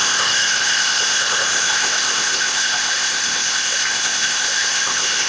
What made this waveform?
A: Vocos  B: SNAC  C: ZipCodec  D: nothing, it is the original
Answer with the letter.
C